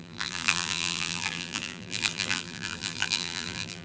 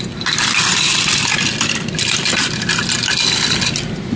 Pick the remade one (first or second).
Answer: first